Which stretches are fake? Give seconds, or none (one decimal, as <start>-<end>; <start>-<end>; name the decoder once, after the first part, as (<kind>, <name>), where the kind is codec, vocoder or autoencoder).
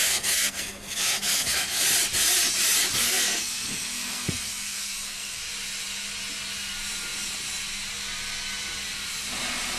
0.0-1.8 (codec, SNAC); 3.0-5.4